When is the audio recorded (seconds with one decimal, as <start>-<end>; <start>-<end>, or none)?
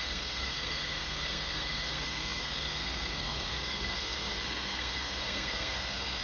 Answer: none